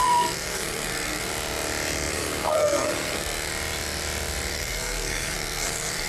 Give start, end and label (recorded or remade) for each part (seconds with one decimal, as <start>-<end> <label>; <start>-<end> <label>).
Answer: 0.0-1.3 remade; 1.3-2.1 recorded; 2.1-3.5 remade; 3.5-4.5 recorded; 4.5-6.1 remade